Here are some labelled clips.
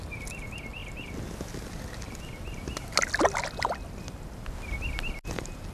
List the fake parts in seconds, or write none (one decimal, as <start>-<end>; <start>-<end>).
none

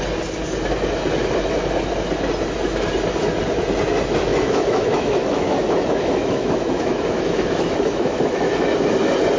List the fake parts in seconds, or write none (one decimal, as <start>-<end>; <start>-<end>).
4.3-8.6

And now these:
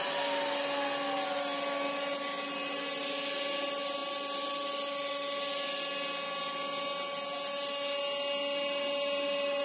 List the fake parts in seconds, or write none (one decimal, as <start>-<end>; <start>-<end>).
none

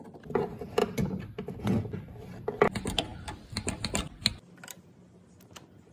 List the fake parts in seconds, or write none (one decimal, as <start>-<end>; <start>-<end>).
none

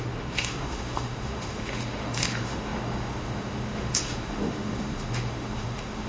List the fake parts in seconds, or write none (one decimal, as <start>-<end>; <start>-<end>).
0.0-6.1

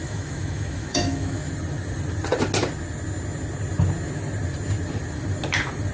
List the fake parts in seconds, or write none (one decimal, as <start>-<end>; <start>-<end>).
0.0-1.5